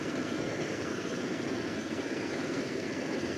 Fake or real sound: fake